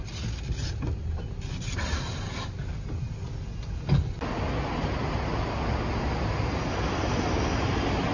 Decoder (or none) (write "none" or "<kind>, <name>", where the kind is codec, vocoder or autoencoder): none